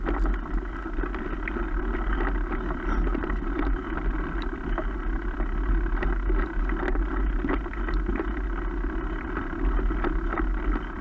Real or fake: real